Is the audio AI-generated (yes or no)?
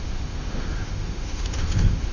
yes